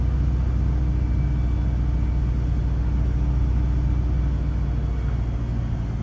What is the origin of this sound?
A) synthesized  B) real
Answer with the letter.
B